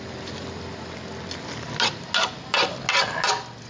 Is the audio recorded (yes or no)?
yes